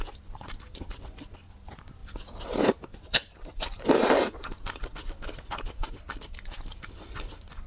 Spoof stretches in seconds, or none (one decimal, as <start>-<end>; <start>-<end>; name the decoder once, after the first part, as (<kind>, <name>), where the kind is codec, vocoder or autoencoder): 2.9-4.9 (vocoder, BigVGAN v2)